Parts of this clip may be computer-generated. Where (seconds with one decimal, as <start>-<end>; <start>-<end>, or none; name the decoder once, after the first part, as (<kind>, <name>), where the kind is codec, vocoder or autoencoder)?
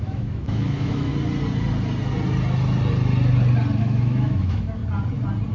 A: 0.0-1.1 (autoencoder, DAC-VAE); 3.8-4.8